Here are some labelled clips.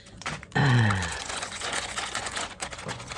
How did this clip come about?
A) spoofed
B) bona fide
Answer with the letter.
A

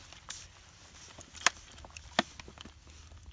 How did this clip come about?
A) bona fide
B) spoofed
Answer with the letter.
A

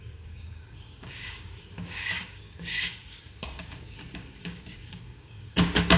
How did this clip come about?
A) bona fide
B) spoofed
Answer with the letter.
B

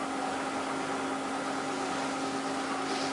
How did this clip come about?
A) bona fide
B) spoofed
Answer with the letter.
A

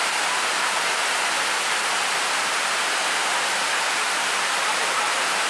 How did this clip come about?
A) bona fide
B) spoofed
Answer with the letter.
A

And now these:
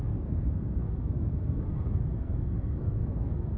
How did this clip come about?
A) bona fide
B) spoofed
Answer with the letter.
B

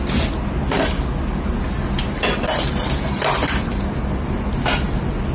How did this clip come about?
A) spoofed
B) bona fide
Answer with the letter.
B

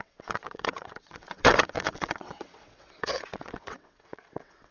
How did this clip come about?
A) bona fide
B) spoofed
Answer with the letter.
B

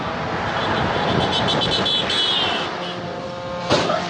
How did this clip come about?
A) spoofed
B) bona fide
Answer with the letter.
B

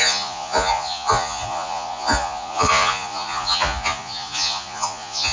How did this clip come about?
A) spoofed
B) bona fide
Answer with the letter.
A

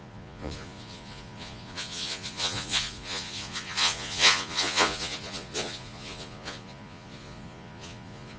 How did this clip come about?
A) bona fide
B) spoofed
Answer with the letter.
B